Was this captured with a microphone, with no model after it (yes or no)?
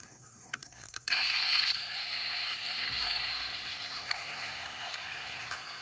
no